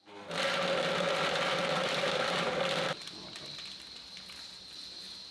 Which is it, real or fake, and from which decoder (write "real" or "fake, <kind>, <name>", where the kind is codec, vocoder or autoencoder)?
real